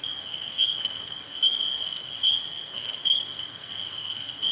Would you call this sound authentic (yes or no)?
no